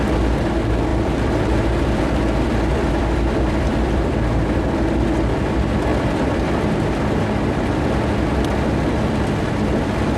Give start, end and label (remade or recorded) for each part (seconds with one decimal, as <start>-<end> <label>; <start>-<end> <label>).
0.0-0.9 recorded; 0.9-5.0 remade; 5.0-5.9 recorded; 5.9-6.9 remade; 6.9-10.2 recorded